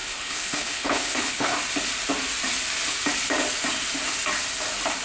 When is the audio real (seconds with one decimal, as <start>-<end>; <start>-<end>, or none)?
1.5-5.0